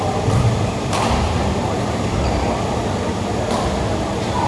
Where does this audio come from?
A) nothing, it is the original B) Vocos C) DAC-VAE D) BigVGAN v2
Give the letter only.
A